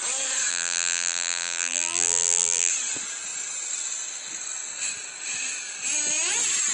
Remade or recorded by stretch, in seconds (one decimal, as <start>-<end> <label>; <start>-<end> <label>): 0.0-0.5 recorded; 0.5-2.7 remade; 2.7-6.7 recorded